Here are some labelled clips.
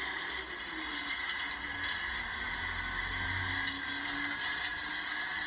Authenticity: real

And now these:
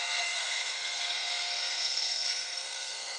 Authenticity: fake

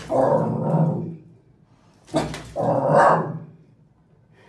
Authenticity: real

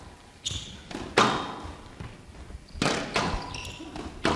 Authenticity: real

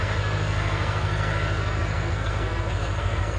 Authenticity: fake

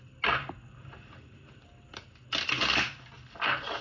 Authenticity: real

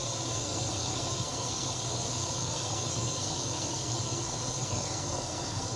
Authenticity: fake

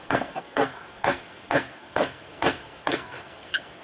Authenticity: fake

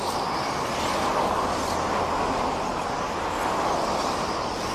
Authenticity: real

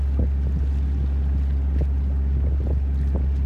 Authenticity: real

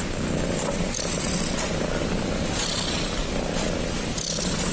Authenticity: real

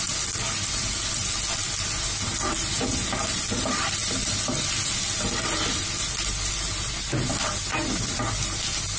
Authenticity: real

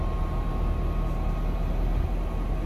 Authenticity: real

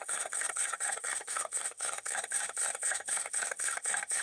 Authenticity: fake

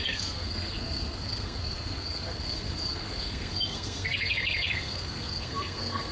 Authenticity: fake